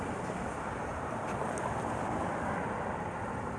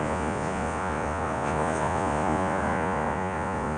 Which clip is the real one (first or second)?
first